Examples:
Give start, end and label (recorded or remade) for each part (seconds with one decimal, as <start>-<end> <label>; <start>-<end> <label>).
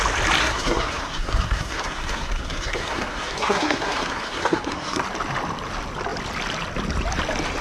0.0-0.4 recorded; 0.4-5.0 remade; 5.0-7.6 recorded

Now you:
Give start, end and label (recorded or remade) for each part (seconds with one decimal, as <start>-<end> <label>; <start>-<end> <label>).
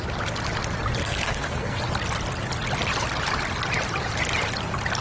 0.0-1.0 recorded; 1.0-1.8 remade; 1.8-5.0 recorded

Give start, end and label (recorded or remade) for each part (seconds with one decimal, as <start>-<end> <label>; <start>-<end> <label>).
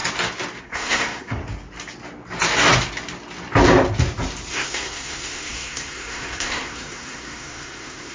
0.0-0.6 recorded; 0.6-1.4 remade; 1.4-4.5 recorded; 4.5-8.1 remade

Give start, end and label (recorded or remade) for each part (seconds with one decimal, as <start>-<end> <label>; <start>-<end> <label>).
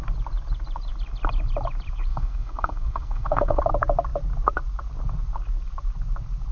0.0-2.1 recorded; 2.1-3.6 remade; 3.6-6.5 recorded